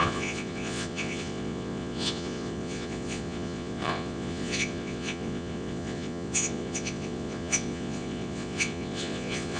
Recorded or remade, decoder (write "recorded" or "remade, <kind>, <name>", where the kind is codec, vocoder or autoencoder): remade, vocoder, Vocos